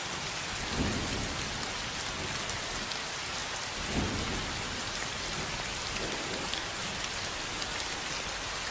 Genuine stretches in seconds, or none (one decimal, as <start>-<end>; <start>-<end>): 1.7-3.4; 6.2-8.7